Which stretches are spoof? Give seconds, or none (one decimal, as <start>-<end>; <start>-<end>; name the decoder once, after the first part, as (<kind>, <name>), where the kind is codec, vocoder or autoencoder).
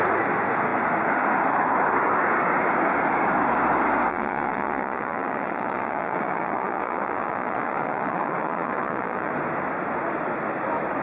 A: 4.1-9.3 (vocoder, Vocos)